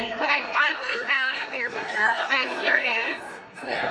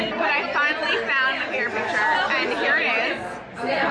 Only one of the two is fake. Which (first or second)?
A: first